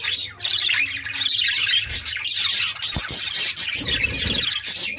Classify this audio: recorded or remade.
recorded